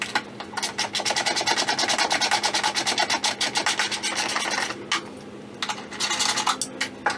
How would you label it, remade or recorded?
recorded